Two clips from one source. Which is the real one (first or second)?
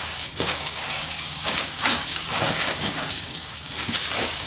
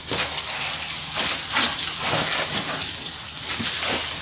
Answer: second